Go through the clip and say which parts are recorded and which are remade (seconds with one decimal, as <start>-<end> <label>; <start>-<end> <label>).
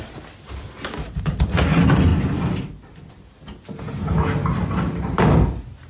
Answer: 0.0-5.9 recorded